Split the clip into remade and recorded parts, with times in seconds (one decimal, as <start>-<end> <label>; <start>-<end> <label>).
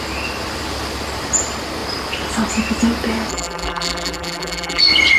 0.0-3.3 recorded; 3.3-4.8 remade; 4.8-5.2 recorded